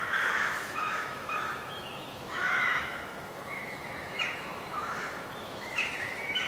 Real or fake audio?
fake